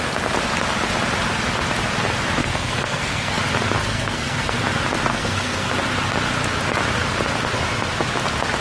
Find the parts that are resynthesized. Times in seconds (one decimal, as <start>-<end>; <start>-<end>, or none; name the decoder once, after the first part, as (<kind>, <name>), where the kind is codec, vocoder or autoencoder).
2.4-3.4 (codec, SNAC); 3.8-4.6; 5.1-5.7